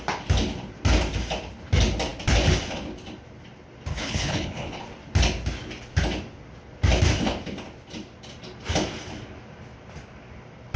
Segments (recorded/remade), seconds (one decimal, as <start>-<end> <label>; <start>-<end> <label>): 0.0-3.9 recorded; 3.9-4.8 remade; 4.8-10.8 recorded